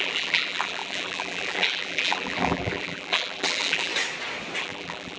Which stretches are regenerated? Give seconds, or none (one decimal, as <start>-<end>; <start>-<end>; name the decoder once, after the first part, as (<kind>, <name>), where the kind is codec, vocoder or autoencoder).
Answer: 0.0-3.9 (vocoder, BigVGAN v2); 4.6-5.2